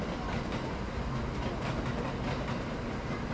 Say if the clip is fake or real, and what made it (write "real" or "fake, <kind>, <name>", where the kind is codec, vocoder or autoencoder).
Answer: real